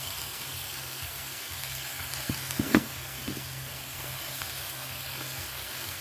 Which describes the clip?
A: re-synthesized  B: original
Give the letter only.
A